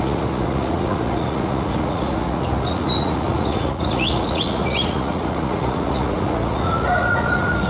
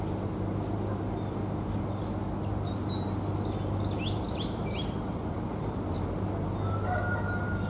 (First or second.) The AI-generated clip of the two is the first